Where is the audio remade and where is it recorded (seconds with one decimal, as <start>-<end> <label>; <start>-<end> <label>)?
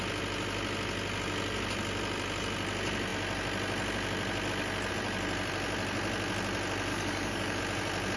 0.0-6.9 recorded; 6.9-7.6 remade; 7.6-8.2 recorded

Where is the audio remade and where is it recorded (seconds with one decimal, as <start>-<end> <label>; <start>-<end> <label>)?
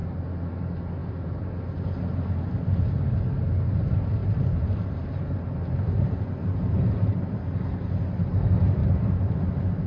0.0-1.0 recorded; 1.0-1.5 remade; 1.5-4.2 recorded; 4.2-7.7 remade; 7.7-8.8 recorded; 8.8-9.3 remade; 9.3-9.9 recorded